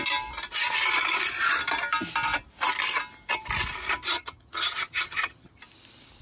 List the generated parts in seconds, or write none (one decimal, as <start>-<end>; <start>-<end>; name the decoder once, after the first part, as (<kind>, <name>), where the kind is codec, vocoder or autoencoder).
4.1-5.6 (vocoder, HiFi-GAN)